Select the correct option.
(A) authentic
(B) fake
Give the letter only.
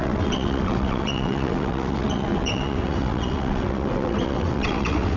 B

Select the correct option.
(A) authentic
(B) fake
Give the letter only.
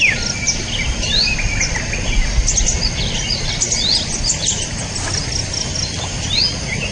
A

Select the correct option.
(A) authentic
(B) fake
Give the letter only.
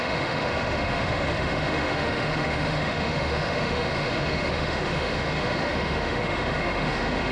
B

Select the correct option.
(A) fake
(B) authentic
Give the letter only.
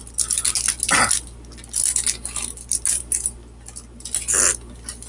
B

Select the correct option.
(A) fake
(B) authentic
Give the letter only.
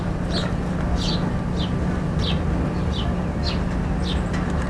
B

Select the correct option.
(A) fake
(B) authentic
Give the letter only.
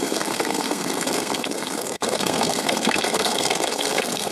A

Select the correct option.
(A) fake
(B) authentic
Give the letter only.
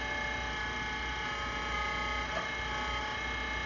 B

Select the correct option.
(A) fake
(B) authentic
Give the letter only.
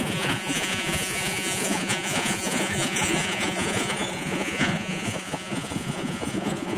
A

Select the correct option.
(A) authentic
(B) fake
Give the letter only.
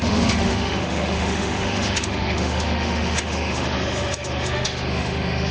B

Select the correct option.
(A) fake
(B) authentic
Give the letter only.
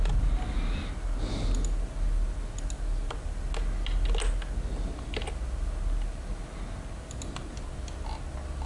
B